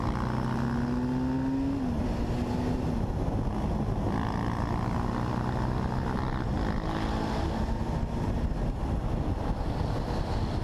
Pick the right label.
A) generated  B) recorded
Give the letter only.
B